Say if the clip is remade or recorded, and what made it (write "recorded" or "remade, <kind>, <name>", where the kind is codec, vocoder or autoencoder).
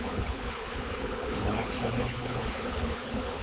remade, codec, HILCodec